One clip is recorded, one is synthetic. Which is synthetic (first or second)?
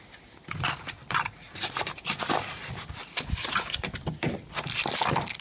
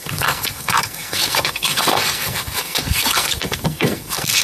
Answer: second